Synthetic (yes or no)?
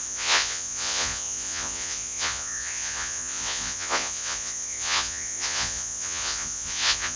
yes